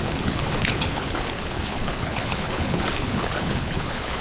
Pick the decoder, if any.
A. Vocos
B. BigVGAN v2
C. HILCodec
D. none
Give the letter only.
C